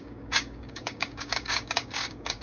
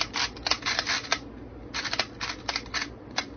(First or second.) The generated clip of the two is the first